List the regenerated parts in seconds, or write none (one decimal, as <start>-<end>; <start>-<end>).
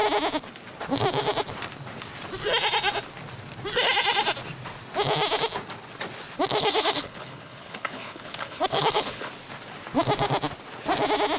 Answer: 6.6-9.3